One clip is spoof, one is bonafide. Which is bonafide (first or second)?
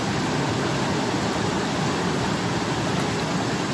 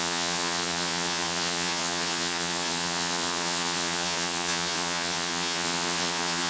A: first